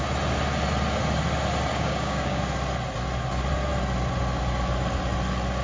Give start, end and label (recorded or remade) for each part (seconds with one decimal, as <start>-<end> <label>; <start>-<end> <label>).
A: 0.0-1.7 recorded; 1.7-2.4 remade; 2.4-5.6 recorded